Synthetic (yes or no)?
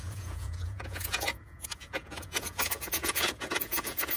yes